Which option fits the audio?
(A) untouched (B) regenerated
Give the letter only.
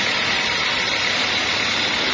A